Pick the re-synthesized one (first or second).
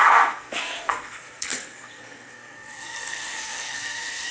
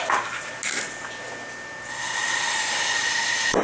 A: first